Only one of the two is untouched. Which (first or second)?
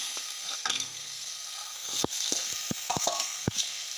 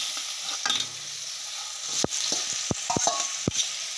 second